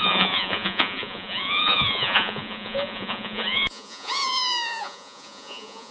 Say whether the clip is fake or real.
fake